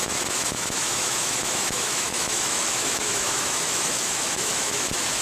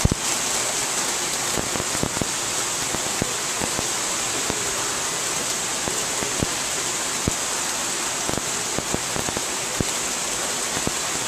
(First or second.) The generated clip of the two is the first